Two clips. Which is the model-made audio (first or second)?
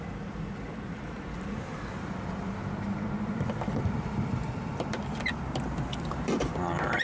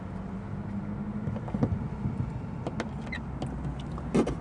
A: first